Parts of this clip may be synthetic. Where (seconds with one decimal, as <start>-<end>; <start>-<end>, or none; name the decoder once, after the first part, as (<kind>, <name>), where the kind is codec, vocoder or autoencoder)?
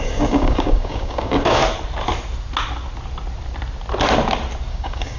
0.0-1.6 (codec, DAC); 4.7-5.2